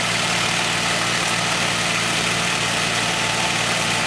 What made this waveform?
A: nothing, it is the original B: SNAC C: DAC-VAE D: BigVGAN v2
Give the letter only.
A